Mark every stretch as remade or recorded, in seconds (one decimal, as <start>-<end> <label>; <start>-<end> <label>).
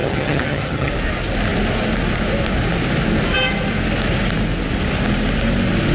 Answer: 0.0-0.9 remade; 0.9-5.9 recorded